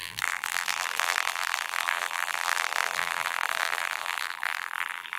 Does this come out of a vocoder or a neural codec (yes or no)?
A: yes